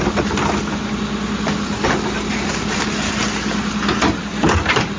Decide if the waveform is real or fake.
real